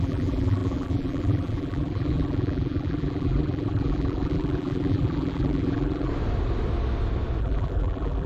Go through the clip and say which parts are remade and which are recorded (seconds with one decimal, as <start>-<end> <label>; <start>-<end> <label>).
0.0-6.1 remade; 6.1-7.4 recorded; 7.4-8.3 remade